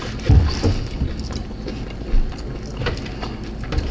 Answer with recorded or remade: recorded